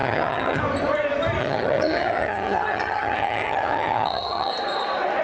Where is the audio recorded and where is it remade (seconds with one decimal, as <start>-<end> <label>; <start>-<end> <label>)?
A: 0.0-0.6 remade; 0.6-1.4 recorded; 1.4-4.5 remade; 4.5-5.2 recorded